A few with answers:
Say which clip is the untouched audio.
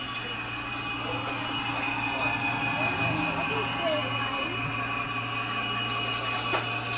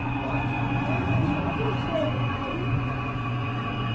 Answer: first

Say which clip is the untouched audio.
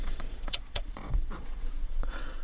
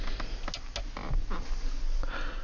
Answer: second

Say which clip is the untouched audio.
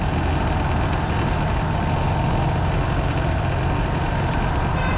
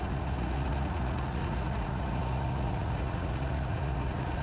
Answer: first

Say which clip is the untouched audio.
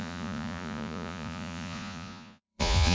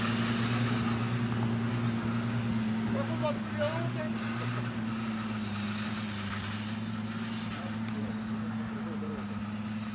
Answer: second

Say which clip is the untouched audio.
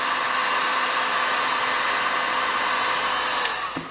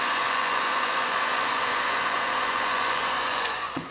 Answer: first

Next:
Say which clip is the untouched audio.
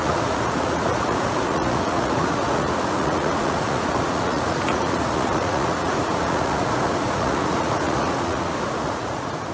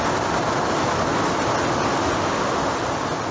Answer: second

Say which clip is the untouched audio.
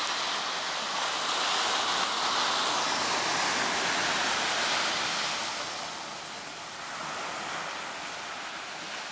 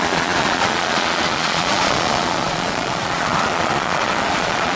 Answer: first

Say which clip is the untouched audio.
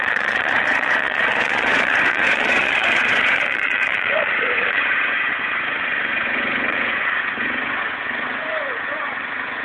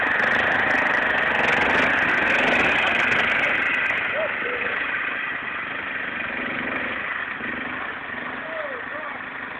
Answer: second